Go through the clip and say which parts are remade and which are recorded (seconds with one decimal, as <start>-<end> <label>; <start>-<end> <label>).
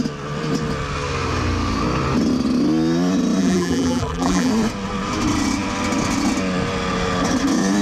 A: 0.0-3.4 recorded; 3.4-4.5 remade; 4.5-7.8 recorded